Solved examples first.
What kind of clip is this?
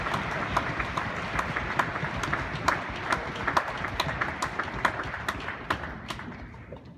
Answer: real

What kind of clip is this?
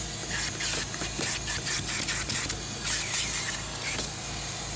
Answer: real